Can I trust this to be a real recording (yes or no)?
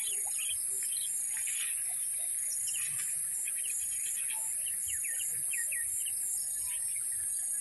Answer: yes